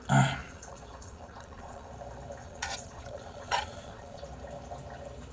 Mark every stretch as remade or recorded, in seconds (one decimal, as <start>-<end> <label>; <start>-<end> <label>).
0.0-0.4 recorded; 0.4-1.9 remade; 1.9-2.4 recorded; 2.4-4.2 remade; 4.2-5.3 recorded